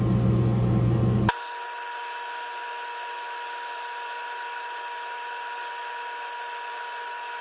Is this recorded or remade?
recorded